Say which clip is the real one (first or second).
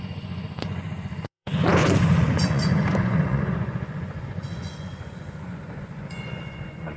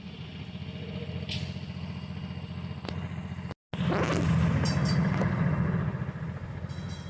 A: second